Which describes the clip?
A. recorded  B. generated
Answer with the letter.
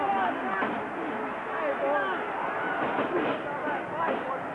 A